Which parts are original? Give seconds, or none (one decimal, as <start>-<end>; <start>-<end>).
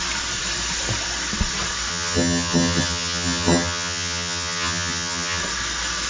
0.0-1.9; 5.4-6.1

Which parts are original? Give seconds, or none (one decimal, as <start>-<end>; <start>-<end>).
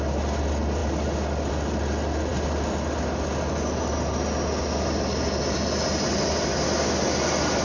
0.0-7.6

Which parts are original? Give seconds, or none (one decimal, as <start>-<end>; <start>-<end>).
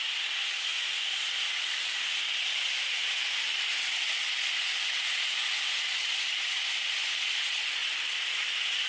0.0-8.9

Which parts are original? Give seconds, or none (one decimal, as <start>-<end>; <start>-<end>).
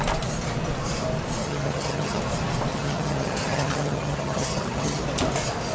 0.0-1.4; 2.2-2.7; 5.0-5.7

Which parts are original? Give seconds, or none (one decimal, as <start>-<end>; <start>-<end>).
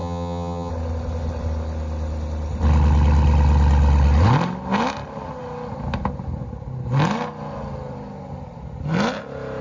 0.7-9.6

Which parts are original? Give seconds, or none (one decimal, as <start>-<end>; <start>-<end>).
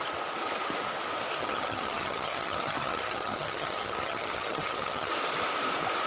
0.0-1.4; 5.1-6.1